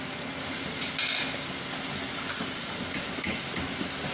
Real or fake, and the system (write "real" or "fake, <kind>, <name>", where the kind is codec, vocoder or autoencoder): real